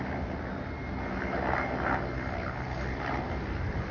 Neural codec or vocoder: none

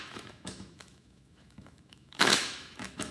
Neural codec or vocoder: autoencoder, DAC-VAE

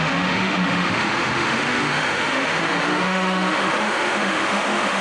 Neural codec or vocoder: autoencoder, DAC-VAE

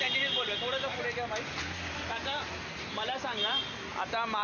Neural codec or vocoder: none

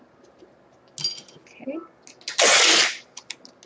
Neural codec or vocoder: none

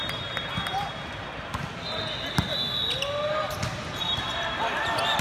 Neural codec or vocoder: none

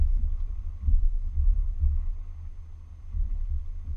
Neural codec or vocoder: none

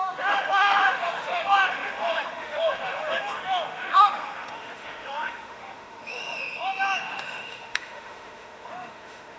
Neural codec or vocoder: autoencoder, DAC-VAE